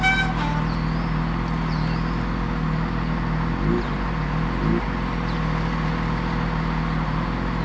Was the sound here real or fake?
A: real